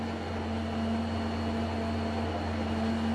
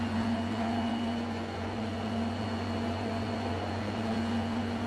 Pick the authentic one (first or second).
first